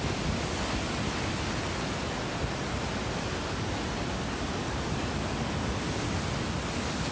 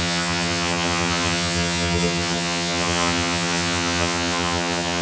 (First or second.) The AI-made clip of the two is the second